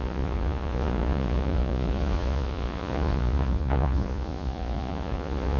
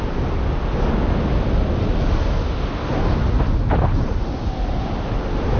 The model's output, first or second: first